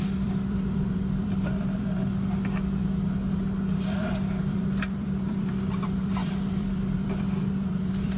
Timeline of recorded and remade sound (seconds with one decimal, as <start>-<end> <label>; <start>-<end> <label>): 0.0-2.0 remade; 2.0-3.7 recorded; 3.7-8.2 remade